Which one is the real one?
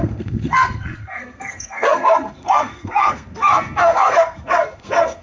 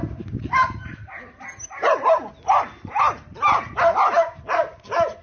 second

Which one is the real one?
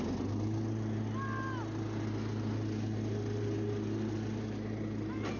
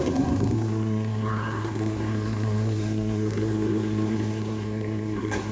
first